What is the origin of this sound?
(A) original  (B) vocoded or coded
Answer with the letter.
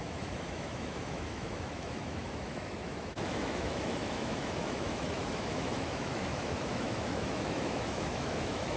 B